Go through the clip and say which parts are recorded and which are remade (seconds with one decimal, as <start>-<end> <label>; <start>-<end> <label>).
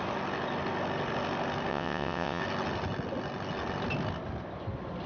0.0-1.7 recorded; 1.7-2.4 remade; 2.4-5.1 recorded